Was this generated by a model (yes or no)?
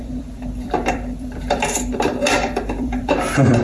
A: yes